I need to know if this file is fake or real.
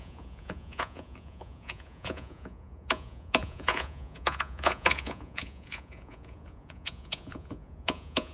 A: fake